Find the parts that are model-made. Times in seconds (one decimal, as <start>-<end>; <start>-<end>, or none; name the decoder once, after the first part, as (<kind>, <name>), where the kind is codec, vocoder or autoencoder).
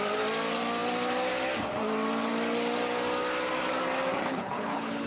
4.3-5.1 (codec, HILCodec)